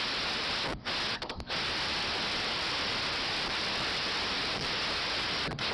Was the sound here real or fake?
real